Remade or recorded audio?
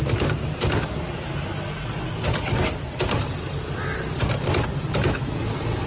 recorded